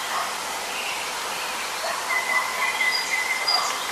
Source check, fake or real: real